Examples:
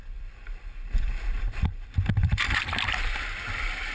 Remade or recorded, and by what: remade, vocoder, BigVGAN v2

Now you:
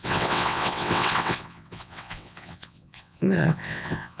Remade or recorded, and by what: remade, vocoder, WaveNeXt